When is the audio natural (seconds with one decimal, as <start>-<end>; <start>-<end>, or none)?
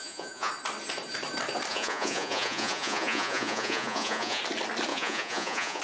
0.5-1.7; 4.4-4.9